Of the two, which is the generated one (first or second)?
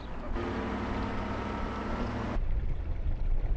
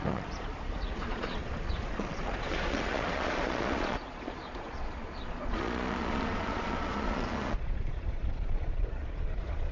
second